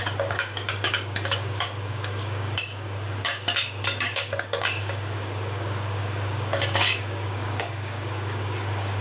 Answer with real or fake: fake